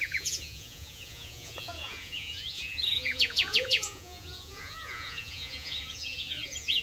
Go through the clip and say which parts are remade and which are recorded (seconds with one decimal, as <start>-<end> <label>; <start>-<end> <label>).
0.0-6.8 remade